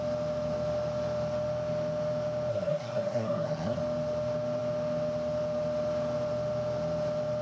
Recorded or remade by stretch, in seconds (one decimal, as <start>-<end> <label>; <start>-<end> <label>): 0.0-2.5 recorded; 2.5-3.8 remade; 3.8-7.4 recorded